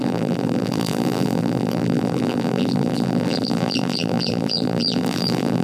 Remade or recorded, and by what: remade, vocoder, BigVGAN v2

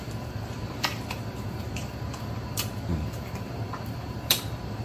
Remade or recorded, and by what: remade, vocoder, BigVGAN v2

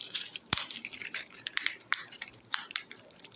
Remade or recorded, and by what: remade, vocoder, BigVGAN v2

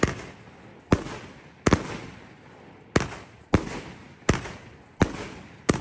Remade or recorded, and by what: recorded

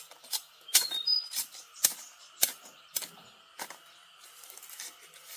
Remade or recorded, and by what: recorded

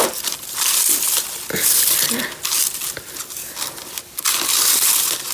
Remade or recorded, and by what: recorded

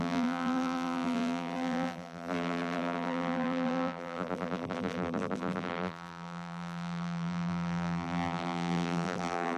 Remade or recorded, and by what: remade, vocoder, BigVGAN v2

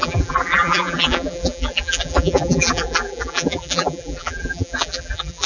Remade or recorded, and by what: remade, vocoder, BigVGAN v2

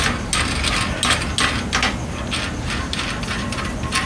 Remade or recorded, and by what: recorded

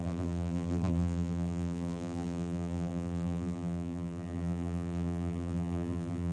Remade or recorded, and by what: remade, vocoder, BigVGAN v2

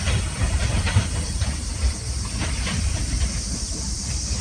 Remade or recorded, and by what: remade, vocoder, BigVGAN v2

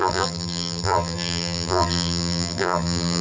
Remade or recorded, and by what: remade, vocoder, BigVGAN v2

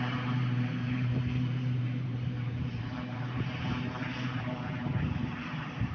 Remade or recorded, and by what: remade, vocoder, BigVGAN v2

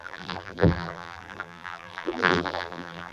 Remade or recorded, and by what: remade, vocoder, BigVGAN v2